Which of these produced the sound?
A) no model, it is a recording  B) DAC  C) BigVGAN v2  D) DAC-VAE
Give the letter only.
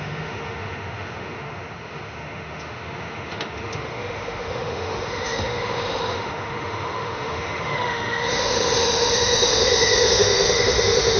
D